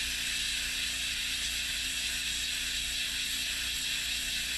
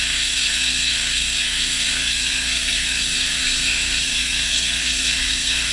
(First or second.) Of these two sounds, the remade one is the second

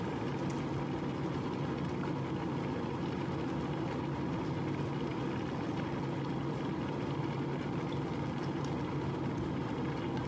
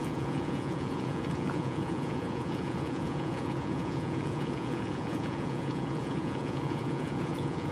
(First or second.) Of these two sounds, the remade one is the second